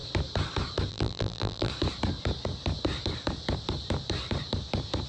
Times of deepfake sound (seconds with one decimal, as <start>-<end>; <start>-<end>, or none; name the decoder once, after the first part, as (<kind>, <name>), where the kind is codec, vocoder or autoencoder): 0.9-1.7 (vocoder, BigVGAN v2)